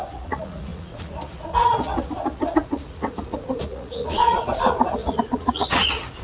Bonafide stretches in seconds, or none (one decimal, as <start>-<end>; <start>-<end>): none